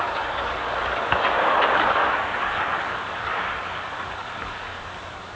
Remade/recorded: remade